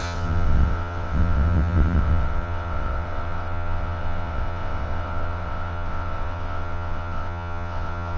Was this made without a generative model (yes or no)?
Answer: no